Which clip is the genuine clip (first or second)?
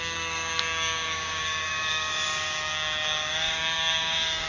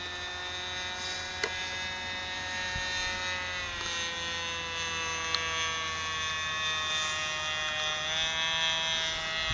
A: second